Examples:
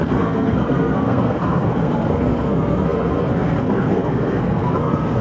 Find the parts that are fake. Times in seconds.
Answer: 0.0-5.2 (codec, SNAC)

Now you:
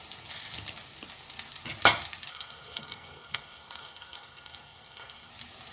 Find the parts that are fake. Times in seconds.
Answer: 2.3-5.3 (codec, SNAC)